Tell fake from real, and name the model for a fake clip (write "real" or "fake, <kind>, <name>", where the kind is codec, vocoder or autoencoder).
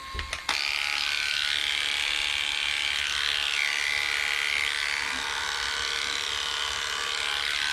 real